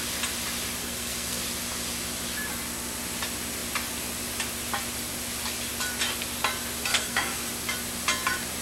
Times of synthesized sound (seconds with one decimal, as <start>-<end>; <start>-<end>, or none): 0.8-1.4; 6.9-7.5